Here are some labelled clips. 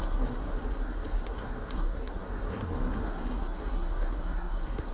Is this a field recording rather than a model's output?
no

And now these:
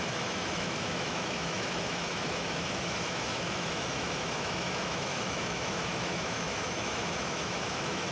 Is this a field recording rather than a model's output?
no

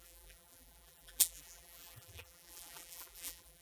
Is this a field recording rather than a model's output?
no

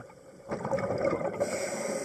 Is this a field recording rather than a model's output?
no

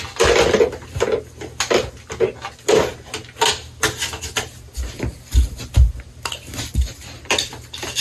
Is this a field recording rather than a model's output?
yes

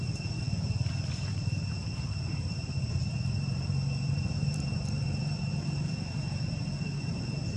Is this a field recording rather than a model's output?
no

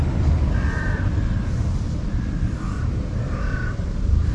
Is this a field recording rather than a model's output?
yes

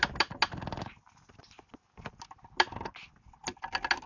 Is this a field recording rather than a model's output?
yes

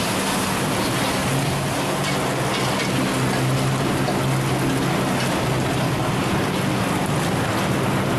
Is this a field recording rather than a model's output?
yes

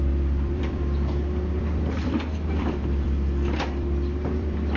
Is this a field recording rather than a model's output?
no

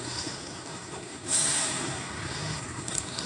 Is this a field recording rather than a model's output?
no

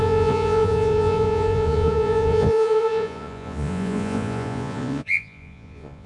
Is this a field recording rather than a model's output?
no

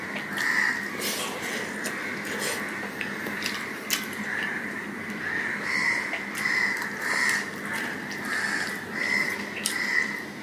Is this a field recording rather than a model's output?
yes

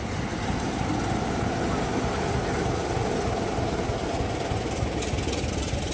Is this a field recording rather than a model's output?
yes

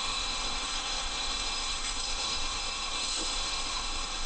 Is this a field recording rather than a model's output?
no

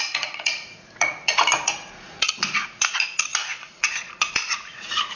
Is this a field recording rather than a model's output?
no